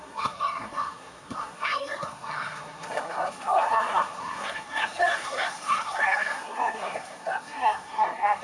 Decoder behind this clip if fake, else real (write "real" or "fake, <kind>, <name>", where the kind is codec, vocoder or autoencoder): fake, codec, SNAC